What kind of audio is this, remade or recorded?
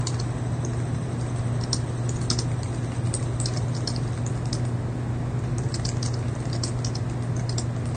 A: recorded